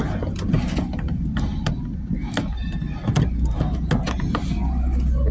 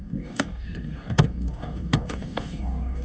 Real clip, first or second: first